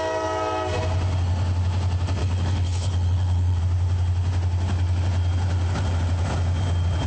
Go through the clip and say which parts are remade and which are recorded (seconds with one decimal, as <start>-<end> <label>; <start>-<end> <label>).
0.0-2.2 recorded; 2.2-3.6 remade; 3.6-7.1 recorded